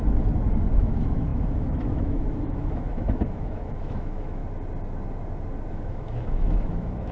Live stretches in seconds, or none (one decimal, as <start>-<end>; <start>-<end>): 0.0-0.8; 4.4-5.7